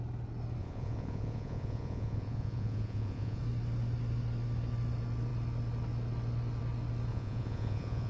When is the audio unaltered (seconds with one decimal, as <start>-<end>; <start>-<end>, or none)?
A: 0.0-0.6; 3.4-7.1

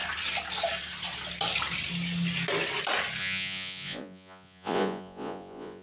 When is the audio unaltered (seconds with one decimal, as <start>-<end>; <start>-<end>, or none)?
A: 0.0-3.2

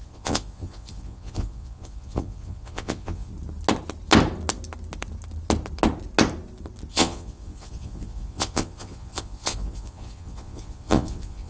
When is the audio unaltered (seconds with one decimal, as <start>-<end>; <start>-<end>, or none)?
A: 3.3-6.9

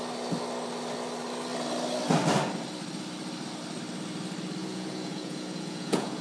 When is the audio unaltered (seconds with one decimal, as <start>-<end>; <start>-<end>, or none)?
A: 0.0-4.6